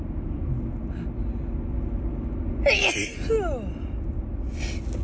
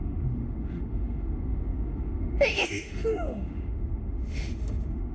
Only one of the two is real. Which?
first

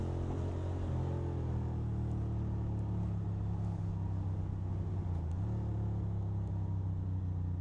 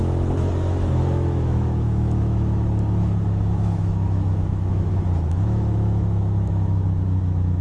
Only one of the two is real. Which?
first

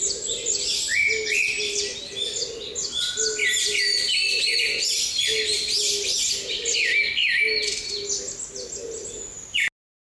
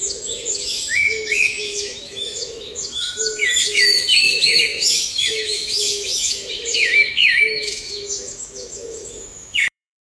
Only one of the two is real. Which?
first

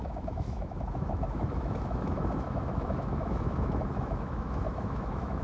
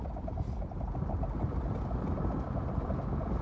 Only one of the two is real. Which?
second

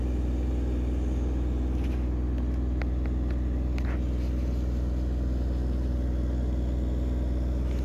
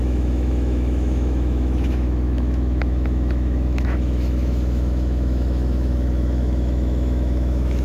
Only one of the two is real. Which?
first